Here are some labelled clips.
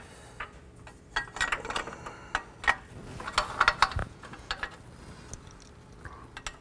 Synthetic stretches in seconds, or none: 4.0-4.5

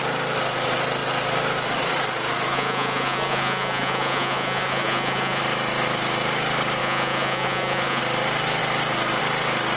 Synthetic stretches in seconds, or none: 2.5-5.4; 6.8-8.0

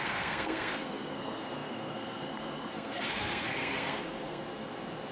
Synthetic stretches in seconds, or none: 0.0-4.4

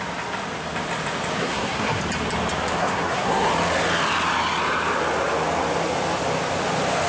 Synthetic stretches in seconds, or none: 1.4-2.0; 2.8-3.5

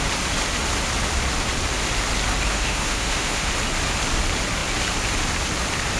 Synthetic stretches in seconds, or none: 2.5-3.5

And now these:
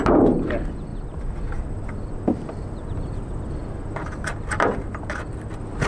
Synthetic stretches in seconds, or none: none

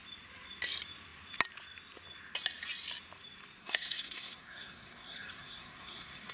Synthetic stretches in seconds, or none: 3.6-6.3

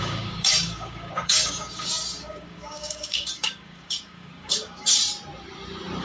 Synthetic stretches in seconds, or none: 0.0-5.0